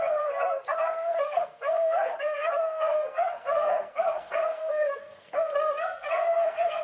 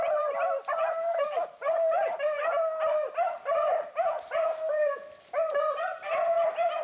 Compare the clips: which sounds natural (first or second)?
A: second